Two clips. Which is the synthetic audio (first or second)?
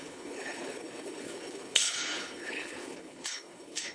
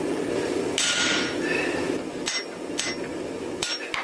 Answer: first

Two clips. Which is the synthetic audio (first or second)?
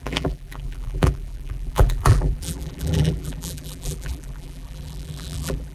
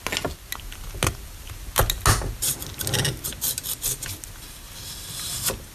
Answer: first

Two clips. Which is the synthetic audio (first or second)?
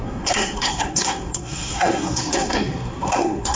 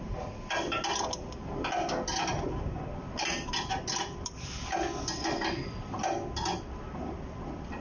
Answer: first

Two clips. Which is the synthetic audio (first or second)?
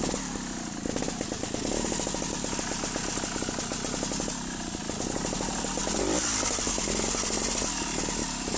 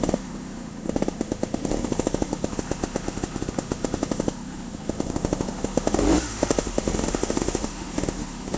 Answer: second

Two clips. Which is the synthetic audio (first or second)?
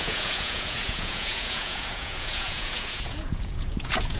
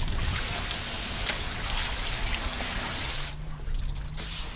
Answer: first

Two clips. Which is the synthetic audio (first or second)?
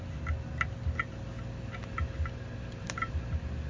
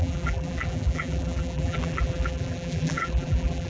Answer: second